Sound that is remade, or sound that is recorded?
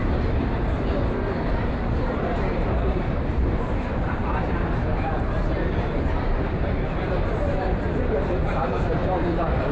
remade